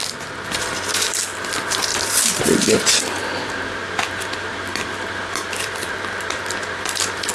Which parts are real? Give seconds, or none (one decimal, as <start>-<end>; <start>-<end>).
0.0-1.9; 3.0-4.7; 5.9-7.3